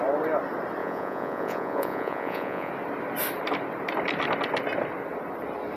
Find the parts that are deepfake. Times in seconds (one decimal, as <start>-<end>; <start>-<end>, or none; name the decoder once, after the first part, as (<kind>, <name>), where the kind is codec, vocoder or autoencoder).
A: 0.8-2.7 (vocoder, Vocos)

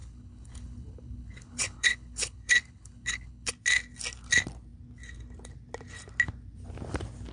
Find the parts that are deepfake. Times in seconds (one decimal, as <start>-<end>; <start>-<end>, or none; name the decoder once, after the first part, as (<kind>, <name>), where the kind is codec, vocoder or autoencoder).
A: 0.0-3.5 (codec, HILCodec)

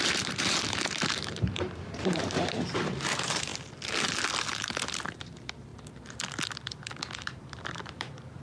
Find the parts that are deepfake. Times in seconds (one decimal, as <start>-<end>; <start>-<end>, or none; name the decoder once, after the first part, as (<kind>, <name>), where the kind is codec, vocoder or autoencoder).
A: 0.0-3.5 (vocoder, BigVGAN v2); 5.2-5.7; 7.3-8.4

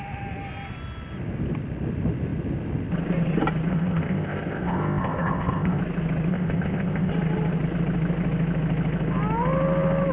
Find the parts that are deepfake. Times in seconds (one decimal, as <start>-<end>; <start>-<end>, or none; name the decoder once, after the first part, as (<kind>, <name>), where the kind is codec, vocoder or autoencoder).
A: 3.7-5.8 (codec, ZipCodec); 6.3-7.1

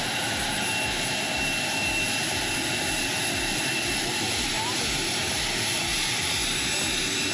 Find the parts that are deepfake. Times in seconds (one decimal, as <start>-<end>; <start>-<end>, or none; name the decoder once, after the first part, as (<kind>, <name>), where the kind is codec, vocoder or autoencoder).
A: 3.1-4.5 (vocoder, BigVGAN v2)

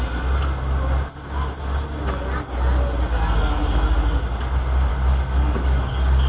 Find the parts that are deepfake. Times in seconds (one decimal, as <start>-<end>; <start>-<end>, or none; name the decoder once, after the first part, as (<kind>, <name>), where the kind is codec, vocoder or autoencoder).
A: 4.9-6.3 (codec, DAC)

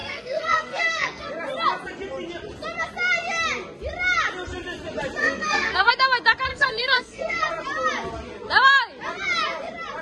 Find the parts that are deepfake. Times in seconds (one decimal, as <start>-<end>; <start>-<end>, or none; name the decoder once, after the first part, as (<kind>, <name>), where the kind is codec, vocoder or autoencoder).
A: 0.0-1.3 (codec, SNAC); 5.2-5.9; 6.5-7.5

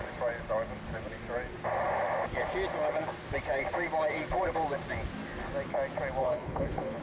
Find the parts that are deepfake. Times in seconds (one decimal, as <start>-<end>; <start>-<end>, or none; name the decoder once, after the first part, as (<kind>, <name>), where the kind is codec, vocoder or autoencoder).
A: 6.2-7.0 (codec, HILCodec)